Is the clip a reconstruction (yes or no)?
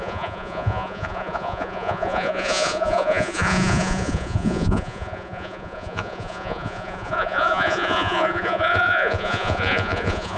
yes